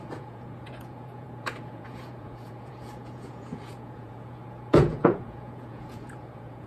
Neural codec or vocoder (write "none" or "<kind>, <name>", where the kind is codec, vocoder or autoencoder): vocoder, Vocos